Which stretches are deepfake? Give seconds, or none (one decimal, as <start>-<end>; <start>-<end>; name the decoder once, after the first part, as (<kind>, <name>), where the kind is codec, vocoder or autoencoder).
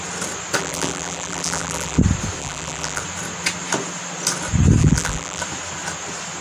0.6-2.0 (vocoder, BigVGAN v2); 2.4-3.0; 4.8-5.4